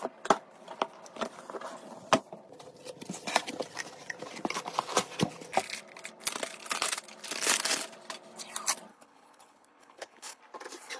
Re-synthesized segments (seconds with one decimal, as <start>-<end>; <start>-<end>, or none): 8.9-10.4